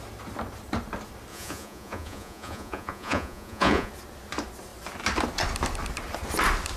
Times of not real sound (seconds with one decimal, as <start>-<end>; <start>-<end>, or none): 1.3-3.9

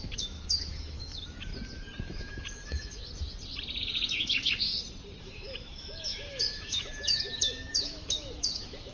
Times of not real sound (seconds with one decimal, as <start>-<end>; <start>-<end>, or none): 0.0-1.5; 2.0-3.0; 3.8-4.7; 5.2-8.9

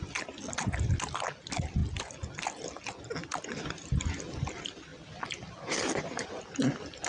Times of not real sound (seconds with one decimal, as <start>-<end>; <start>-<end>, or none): none